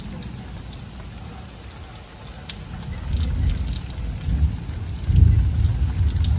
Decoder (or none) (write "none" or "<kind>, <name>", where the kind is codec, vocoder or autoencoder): none